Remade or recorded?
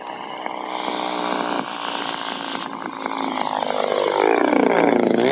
recorded